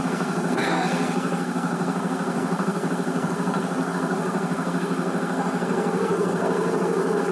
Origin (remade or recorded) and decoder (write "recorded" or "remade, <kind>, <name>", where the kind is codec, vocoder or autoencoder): remade, codec, SNAC